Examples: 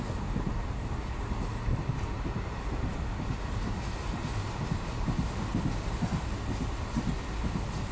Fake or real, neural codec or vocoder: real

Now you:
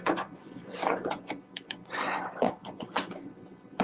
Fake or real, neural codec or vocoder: fake, vocoder, Vocos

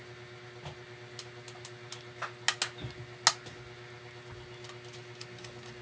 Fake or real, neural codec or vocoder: real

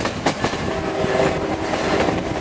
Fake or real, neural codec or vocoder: fake, vocoder, BigVGAN v2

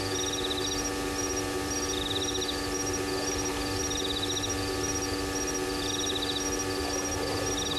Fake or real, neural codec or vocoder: real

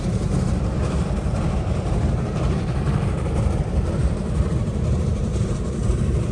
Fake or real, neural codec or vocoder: fake, vocoder, BigVGAN v2